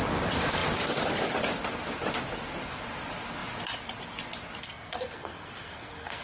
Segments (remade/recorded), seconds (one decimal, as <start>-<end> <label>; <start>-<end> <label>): 0.0-4.6 recorded; 4.6-6.2 remade